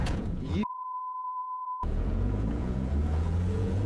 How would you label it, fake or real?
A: fake